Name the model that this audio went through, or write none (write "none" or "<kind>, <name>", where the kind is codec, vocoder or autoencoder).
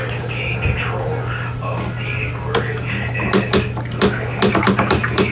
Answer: none